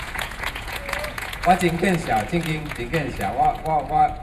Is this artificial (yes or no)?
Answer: yes